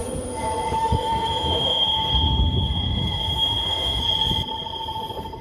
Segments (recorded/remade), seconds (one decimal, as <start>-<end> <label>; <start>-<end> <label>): 0.0-0.8 recorded; 0.8-4.0 remade; 4.0-5.4 recorded